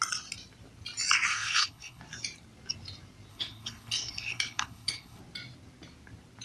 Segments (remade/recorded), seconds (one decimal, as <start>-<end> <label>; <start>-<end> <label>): 0.0-1.3 recorded; 1.3-2.0 remade; 2.0-3.3 recorded; 3.3-5.2 remade; 5.2-6.4 recorded